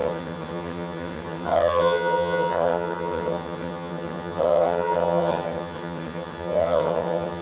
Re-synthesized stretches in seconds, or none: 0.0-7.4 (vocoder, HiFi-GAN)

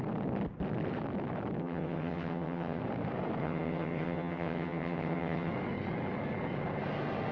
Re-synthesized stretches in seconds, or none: 1.6-2.8 (vocoder, HiFi-GAN); 3.4-5.5

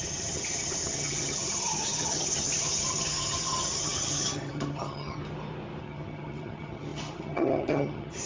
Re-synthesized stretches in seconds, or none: 0.0-5.2 (vocoder, HiFi-GAN); 5.8-8.3

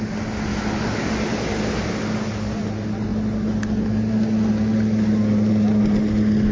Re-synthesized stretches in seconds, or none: none

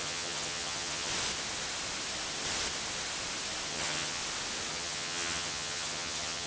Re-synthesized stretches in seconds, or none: 0.0-1.1 (vocoder, HiFi-GAN); 3.7-4.2; 4.7-6.5

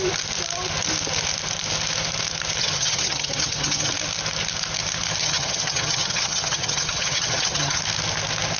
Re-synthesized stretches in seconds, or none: 2.6-3.9 (vocoder, HiFi-GAN); 5.2-7.8

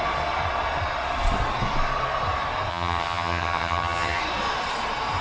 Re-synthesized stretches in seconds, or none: 2.7-4.2 (vocoder, HiFi-GAN)

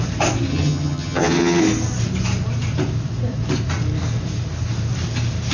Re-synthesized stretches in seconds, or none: 0.5-1.6 (vocoder, HiFi-GAN)